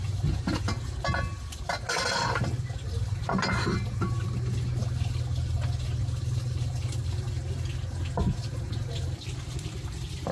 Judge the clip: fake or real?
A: real